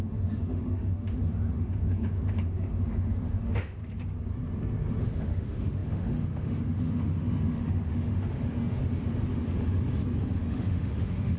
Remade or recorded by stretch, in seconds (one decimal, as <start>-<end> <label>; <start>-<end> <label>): 0.0-3.8 remade; 3.8-5.0 recorded; 5.0-8.8 remade; 8.8-10.3 recorded; 10.3-11.4 remade